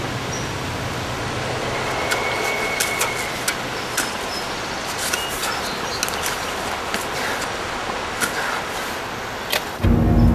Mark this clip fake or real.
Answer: real